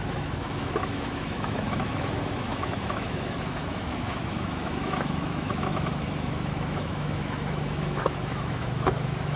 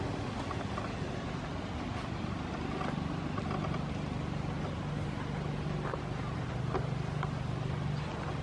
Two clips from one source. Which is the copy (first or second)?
first